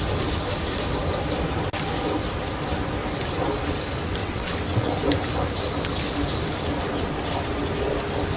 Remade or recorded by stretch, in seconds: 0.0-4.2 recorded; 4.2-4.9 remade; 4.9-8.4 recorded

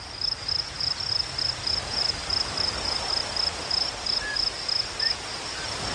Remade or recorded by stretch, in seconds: 0.0-5.9 recorded

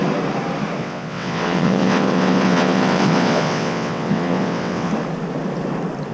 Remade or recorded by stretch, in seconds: 0.0-0.8 recorded; 0.8-4.9 remade; 4.9-6.1 recorded

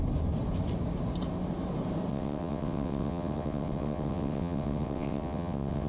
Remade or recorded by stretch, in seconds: 0.0-2.1 recorded; 2.1-5.9 remade

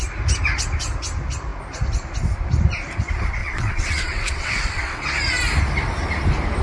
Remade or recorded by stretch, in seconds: 0.0-3.4 recorded; 3.4-5.0 remade; 5.0-6.6 recorded

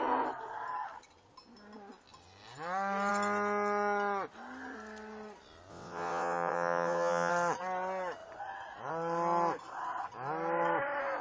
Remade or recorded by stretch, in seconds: 0.0-5.7 recorded; 5.7-7.3 remade; 7.3-11.2 recorded

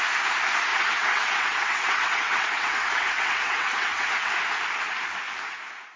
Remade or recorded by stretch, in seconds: 0.0-0.7 recorded; 0.7-4.3 remade; 4.3-6.0 recorded

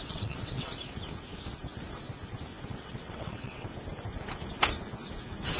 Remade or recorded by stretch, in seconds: 0.0-0.7 remade; 0.7-2.8 recorded; 2.8-3.7 remade; 3.7-5.6 recorded